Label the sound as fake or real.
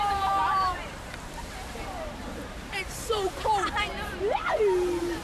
fake